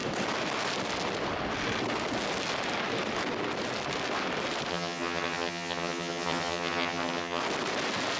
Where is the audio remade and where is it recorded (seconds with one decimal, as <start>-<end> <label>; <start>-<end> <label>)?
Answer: 0.0-4.7 recorded; 4.7-7.4 remade; 7.4-8.2 recorded